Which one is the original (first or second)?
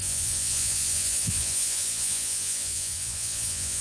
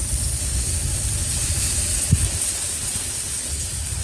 second